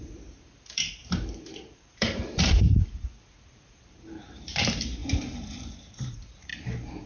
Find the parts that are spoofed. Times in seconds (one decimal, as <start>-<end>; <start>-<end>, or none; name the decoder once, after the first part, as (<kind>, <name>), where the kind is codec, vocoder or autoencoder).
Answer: 0.0-7.1 (vocoder, BigVGAN v2)